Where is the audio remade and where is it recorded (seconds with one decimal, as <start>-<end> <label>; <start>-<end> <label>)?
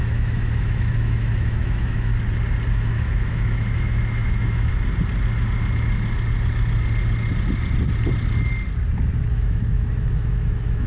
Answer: 0.0-2.1 remade; 2.1-2.7 recorded; 2.7-4.7 remade; 4.7-9.3 recorded; 9.3-10.9 remade